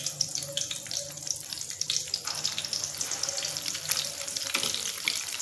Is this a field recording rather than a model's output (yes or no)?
no